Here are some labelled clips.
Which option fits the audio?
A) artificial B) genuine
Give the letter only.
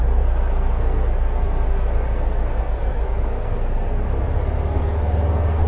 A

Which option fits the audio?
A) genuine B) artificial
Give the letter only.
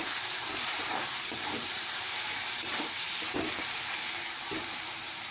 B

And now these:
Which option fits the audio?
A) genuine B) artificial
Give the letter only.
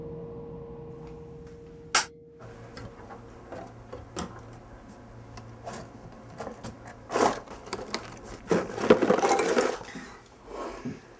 A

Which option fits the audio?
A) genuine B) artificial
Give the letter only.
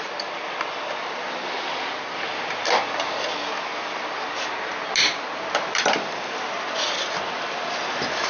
A